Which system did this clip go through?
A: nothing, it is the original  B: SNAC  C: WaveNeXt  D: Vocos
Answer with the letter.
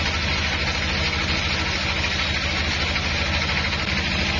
A